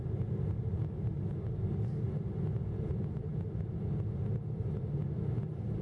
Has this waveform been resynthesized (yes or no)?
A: no